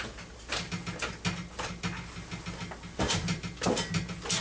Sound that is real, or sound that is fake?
real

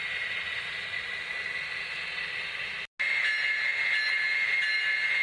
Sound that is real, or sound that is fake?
real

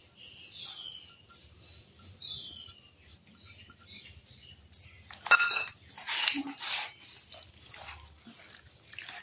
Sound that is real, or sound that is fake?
real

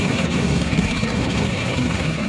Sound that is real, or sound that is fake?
fake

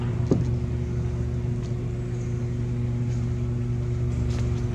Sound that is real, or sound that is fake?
real